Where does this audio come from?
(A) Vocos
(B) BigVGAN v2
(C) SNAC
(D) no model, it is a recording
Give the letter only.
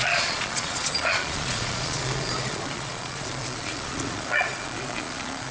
A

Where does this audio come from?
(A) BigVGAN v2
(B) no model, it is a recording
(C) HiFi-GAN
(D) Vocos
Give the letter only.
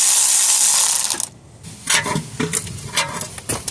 B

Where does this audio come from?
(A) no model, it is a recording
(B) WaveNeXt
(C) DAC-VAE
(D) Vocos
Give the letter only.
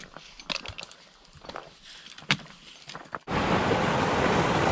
A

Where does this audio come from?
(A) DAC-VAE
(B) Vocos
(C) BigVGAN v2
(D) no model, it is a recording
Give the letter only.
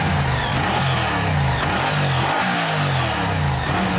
D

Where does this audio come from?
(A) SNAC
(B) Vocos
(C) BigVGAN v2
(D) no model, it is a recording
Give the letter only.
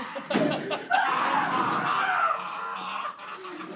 D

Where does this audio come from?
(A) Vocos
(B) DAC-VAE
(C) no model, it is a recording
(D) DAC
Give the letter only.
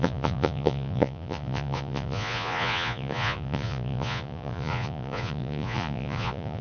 A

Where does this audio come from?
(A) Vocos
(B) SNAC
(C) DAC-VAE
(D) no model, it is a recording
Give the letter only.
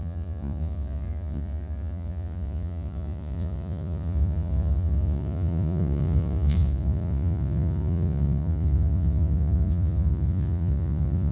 A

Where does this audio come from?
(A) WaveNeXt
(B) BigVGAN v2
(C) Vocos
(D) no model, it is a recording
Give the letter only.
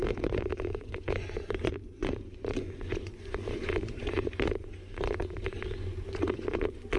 C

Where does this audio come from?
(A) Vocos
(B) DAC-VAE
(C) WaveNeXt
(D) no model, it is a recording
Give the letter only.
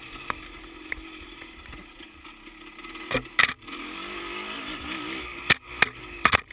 D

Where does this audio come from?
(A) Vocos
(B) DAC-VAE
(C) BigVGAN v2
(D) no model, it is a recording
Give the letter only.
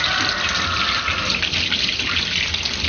D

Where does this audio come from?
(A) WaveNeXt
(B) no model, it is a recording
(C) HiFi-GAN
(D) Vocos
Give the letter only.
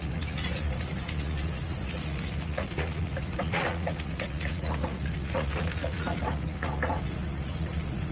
D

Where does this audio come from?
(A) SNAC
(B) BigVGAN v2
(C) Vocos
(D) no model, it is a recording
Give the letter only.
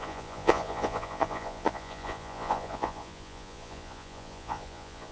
C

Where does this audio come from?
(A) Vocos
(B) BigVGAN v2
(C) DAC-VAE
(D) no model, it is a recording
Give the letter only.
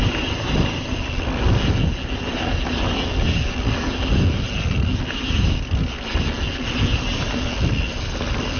D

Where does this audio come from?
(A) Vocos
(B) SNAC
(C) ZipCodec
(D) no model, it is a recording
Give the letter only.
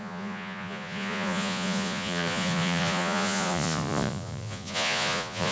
A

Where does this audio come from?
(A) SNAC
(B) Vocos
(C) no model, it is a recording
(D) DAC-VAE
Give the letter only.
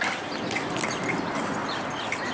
C